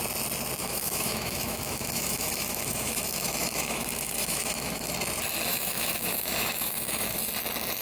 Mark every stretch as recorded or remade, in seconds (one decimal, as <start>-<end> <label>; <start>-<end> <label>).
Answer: 0.0-0.6 recorded; 0.6-4.9 remade; 4.9-5.5 recorded; 5.5-7.2 remade; 7.2-7.8 recorded